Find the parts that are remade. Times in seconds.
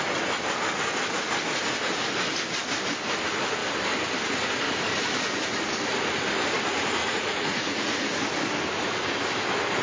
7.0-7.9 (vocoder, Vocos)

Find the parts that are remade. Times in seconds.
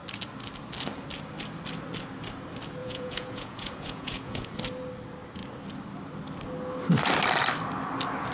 2.8-4.5 (vocoder, Vocos)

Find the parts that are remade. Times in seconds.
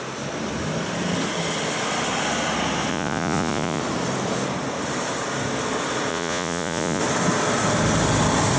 2.9-3.8 (vocoder, Vocos); 6.1-7.0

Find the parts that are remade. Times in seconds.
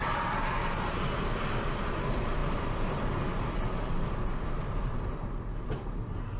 none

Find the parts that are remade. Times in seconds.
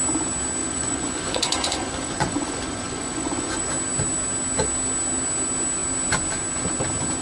0.6-3.6 (vocoder, Vocos)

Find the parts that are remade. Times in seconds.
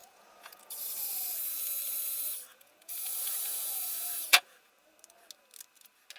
0.0-0.8 (vocoder, Vocos); 2.5-4.7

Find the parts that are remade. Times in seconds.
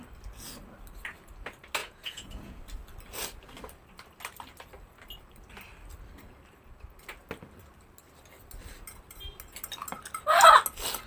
1.8-2.6 (vocoder, Vocos)